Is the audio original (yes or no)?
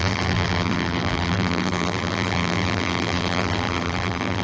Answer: no